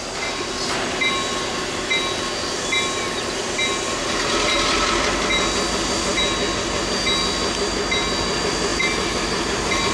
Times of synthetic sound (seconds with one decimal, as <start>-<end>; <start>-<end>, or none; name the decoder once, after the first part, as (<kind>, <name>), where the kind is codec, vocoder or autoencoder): none